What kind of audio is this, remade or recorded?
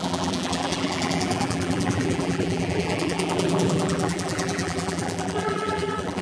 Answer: remade